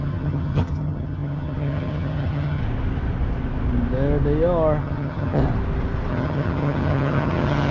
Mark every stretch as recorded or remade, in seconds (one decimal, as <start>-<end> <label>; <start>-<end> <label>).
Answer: 0.0-2.6 remade; 2.6-4.8 recorded; 4.8-5.4 remade; 5.4-6.1 recorded; 6.1-7.7 remade